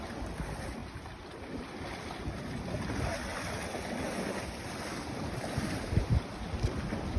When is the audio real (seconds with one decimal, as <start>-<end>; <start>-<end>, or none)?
0.0-7.2